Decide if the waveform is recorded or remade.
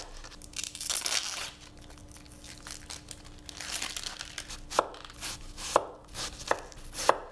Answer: recorded